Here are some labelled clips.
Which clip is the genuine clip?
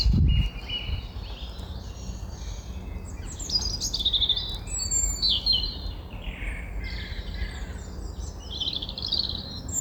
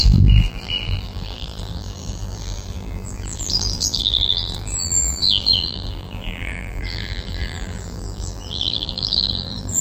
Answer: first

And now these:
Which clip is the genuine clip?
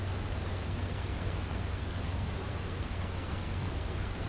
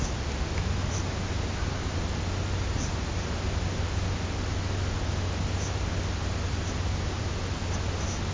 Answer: second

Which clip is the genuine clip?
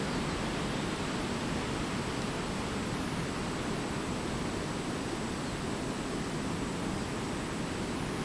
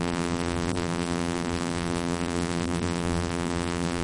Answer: first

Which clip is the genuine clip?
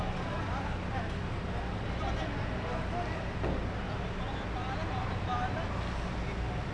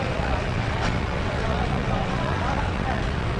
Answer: first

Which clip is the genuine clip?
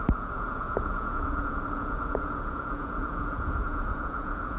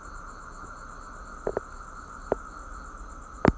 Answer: second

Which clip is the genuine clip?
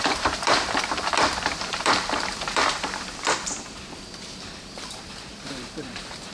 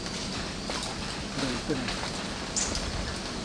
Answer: second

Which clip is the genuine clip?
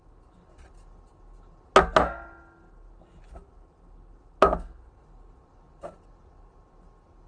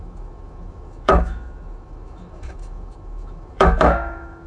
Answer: first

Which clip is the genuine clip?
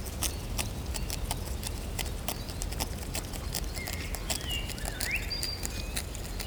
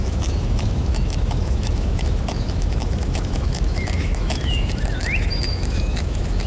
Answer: first